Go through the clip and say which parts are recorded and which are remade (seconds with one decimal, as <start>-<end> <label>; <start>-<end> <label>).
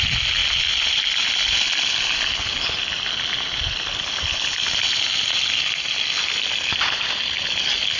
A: 0.0-8.0 recorded